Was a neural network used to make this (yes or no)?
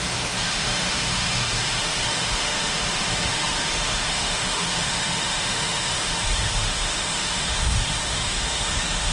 yes